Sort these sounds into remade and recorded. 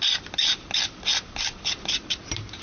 recorded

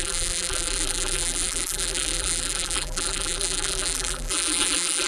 remade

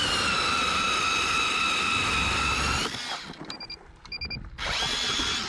recorded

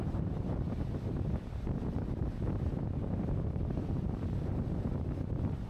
remade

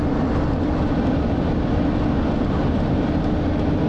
recorded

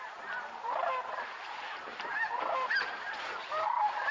remade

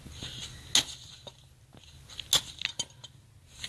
recorded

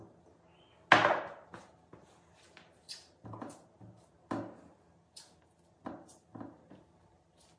recorded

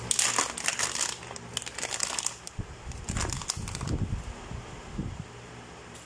recorded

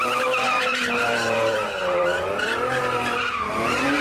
remade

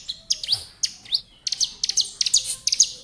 recorded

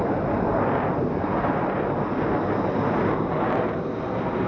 remade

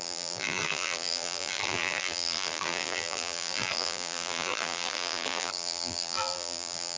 remade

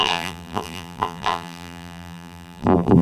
remade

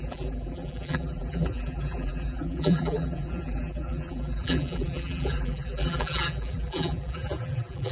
remade